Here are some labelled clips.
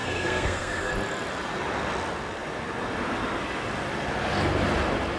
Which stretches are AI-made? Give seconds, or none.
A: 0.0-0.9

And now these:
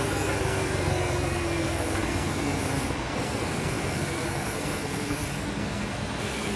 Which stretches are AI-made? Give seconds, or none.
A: 0.0-6.6

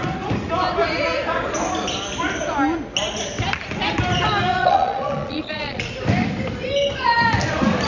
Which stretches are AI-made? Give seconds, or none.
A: 4.6-5.9

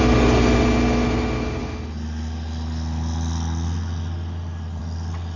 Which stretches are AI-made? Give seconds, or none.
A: none

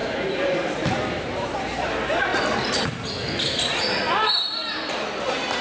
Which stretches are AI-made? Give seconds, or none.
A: 0.0-1.6; 4.6-5.6

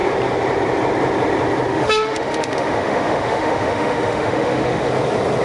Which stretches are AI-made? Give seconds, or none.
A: 1.7-4.9

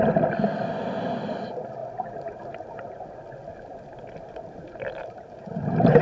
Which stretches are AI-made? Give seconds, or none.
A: 1.8-3.1; 5.0-5.6

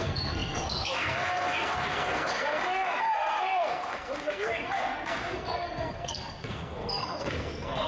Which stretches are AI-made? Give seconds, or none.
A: 0.0-7.9